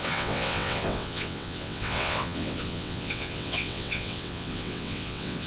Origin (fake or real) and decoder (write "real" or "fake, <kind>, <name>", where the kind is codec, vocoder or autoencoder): fake, vocoder, WaveNeXt